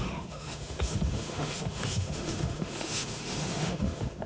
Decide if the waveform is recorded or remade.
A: remade